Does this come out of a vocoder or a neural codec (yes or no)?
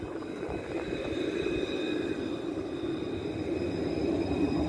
no